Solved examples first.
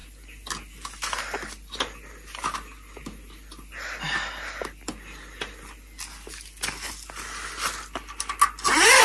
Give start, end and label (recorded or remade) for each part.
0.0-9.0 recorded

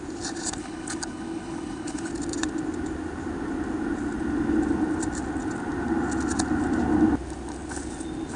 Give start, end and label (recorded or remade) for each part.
0.0-0.6 recorded; 0.6-2.1 remade; 2.1-8.4 recorded

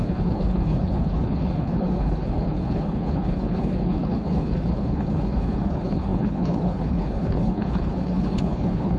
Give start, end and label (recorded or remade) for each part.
0.0-9.0 remade

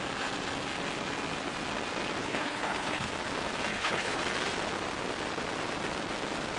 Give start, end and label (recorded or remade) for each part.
0.0-2.2 recorded; 2.2-3.1 remade; 3.1-3.7 recorded; 3.7-4.2 remade; 4.2-6.6 recorded

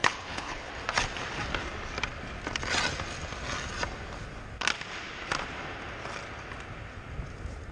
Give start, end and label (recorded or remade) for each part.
0.0-0.7 remade; 0.7-7.7 recorded

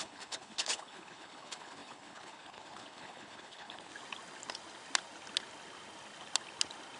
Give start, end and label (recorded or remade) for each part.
0.0-3.9 remade; 3.9-7.0 recorded

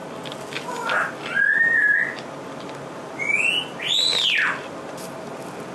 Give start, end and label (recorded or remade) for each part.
0.0-5.7 recorded